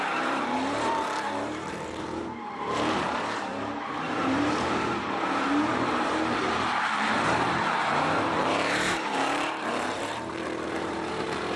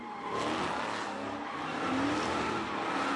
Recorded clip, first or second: second